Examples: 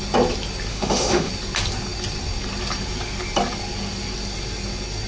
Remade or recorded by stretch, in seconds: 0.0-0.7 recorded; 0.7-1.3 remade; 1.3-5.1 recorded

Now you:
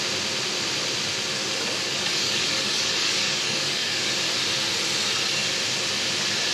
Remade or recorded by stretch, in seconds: 0.0-1.3 recorded; 1.3-4.1 remade; 4.1-6.5 recorded

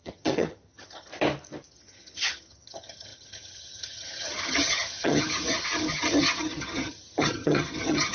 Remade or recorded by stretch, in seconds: 0.0-1.1 remade; 1.1-1.7 recorded; 1.7-8.1 remade

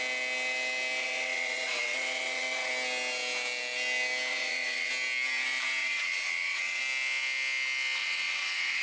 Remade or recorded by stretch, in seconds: 0.0-1.0 recorded; 1.0-2.7 remade; 2.7-4.3 recorded; 4.3-4.9 remade; 4.9-5.8 recorded; 5.8-6.8 remade; 6.8-8.0 recorded; 8.0-8.8 remade

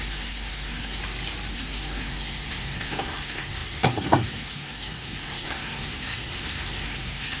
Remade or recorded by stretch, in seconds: 0.0-1.0 remade; 1.0-1.5 recorded; 1.5-7.4 remade

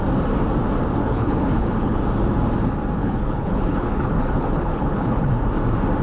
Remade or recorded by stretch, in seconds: 0.0-1.0 recorded; 1.0-2.0 remade; 2.0-3.0 recorded; 3.0-5.3 remade; 5.3-6.0 recorded

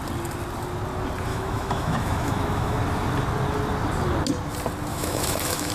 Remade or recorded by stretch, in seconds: 0.0-1.3 recorded; 1.3-2.8 remade; 2.8-4.9 recorded; 4.9-5.7 remade